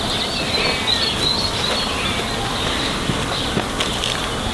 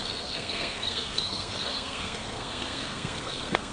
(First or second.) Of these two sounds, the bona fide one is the first